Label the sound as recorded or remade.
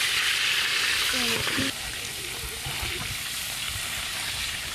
recorded